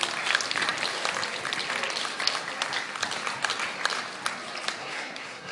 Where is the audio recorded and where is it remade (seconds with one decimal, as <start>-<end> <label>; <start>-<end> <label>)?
0.0-4.8 recorded; 4.8-5.5 remade